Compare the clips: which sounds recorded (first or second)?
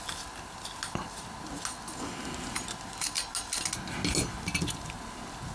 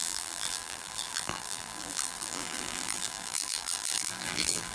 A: first